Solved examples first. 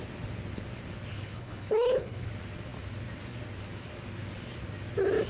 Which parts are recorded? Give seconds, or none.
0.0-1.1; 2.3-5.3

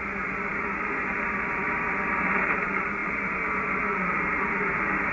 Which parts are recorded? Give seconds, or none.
none

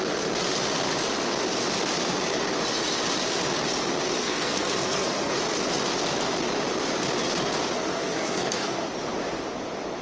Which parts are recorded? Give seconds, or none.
0.0-4.2; 5.4-7.9; 8.9-10.0

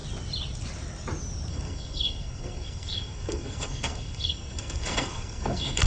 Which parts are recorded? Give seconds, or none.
0.0-1.5

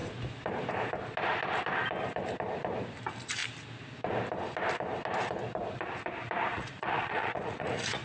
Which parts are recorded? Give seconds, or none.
0.0-6.5

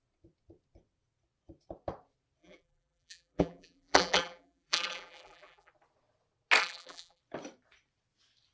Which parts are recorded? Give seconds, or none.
0.0-2.4; 5.7-6.6; 7.2-8.5